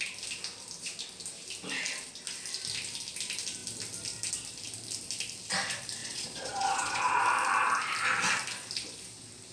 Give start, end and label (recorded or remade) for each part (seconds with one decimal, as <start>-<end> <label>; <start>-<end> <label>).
0.0-6.0 recorded; 6.0-7.2 remade; 7.2-9.5 recorded